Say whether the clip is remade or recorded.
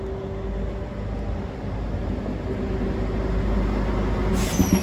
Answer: recorded